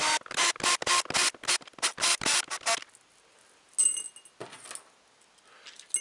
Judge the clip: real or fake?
real